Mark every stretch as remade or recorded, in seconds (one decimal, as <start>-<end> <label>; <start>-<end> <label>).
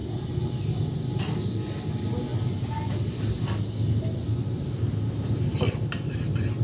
0.0-6.6 recorded